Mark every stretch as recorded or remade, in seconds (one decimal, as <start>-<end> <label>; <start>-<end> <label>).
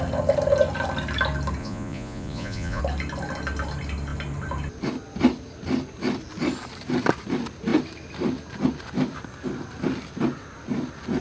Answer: 0.0-1.6 recorded; 1.6-2.8 remade; 2.8-11.2 recorded